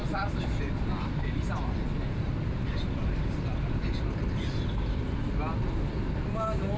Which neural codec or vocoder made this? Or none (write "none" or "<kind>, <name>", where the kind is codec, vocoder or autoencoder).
none